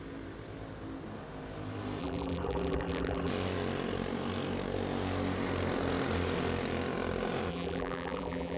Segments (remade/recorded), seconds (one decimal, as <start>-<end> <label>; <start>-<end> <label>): 0.0-2.0 recorded; 2.0-3.3 remade; 3.3-7.5 recorded; 7.5-8.6 remade